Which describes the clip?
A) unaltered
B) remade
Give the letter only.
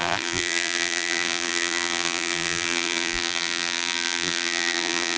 B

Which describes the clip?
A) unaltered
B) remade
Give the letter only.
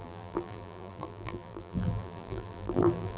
B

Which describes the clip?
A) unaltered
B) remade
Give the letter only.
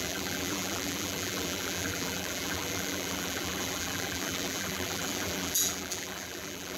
B